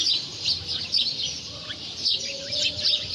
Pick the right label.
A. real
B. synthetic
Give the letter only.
A